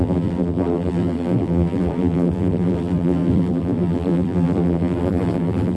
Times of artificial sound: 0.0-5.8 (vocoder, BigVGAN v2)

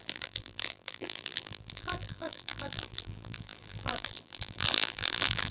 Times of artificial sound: 0.0-5.5 (vocoder, BigVGAN v2)

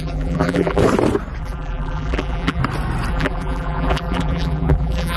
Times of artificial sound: 0.0-0.8 (vocoder, BigVGAN v2); 1.4-2.6; 3.1-5.2

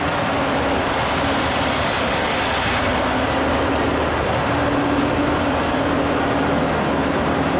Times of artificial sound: 0.0-2.9 (vocoder, BigVGAN v2)